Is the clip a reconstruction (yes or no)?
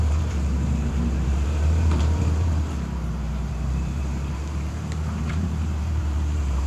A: yes